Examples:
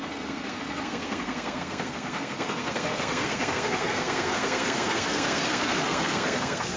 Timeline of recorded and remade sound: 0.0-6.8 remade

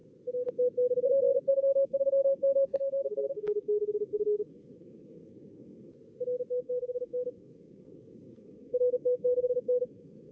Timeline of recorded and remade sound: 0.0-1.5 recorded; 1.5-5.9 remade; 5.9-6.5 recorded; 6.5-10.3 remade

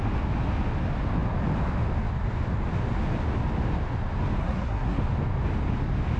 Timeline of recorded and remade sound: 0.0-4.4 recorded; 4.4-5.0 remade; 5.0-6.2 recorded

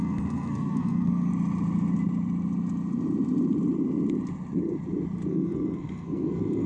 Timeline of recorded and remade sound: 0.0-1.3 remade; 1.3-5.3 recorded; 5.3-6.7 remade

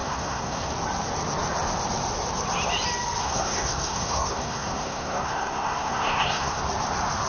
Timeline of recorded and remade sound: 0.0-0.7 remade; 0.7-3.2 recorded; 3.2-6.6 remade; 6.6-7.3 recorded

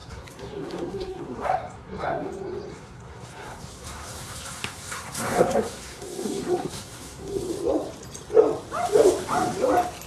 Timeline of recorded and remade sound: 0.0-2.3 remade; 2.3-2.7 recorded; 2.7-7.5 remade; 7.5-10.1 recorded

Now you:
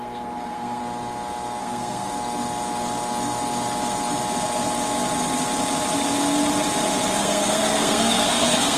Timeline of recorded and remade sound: 0.0-0.8 remade; 0.8-1.6 recorded; 1.6-2.1 remade; 2.1-7.2 recorded; 7.2-8.8 remade